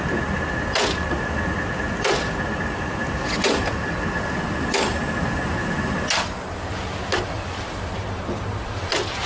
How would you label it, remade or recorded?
recorded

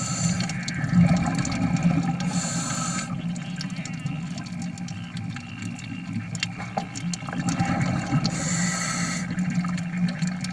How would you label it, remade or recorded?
recorded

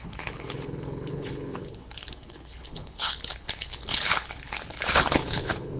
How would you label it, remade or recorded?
remade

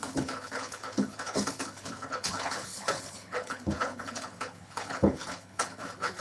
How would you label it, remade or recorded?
remade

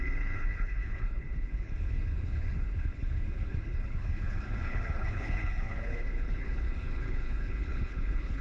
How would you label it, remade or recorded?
remade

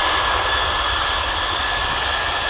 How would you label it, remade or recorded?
recorded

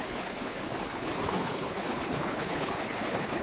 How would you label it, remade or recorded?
remade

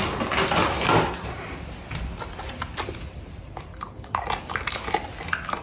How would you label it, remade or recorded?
recorded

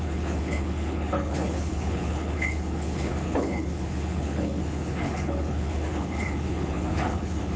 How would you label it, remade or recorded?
remade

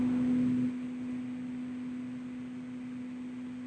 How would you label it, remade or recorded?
recorded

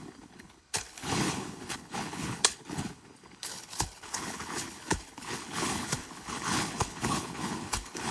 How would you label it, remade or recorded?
remade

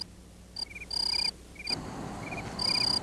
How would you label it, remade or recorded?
recorded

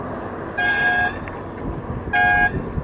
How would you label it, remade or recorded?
recorded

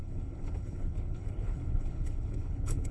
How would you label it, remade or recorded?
remade